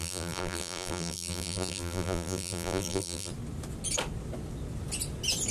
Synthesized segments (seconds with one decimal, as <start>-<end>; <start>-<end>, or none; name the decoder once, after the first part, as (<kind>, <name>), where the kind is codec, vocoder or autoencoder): 0.0-3.3 (vocoder, BigVGAN v2)

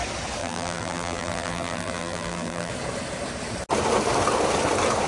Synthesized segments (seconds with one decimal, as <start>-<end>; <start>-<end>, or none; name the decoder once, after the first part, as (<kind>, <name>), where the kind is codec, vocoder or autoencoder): 0.4-2.7 (vocoder, BigVGAN v2)

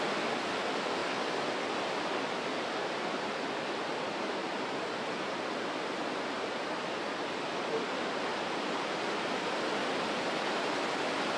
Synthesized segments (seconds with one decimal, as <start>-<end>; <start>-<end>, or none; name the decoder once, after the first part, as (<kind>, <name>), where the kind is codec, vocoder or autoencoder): 4.4-6.2 (vocoder, BigVGAN v2)

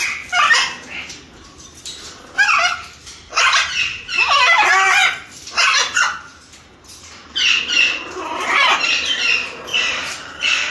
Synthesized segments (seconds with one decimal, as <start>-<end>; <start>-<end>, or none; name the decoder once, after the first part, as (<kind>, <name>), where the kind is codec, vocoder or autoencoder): 6.3-7.6 (vocoder, BigVGAN v2); 9.7-10.7

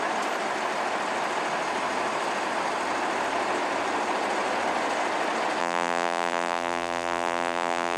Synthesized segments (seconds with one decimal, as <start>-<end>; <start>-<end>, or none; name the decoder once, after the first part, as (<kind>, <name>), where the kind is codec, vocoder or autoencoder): 5.6-8.0 (vocoder, BigVGAN v2)

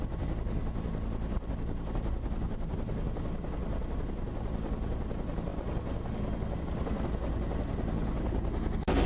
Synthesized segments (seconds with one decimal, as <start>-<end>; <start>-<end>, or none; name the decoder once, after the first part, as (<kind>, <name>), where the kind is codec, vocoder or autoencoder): none